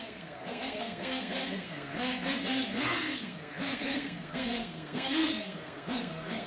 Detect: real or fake fake